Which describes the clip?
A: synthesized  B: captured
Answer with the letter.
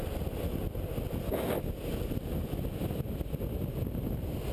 B